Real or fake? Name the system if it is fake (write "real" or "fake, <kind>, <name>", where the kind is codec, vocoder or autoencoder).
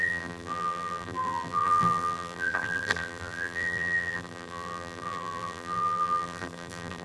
fake, vocoder, BigVGAN v2